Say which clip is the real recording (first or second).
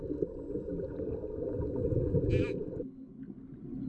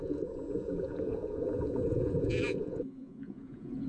first